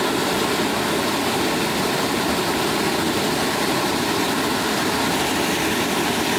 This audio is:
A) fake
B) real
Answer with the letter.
B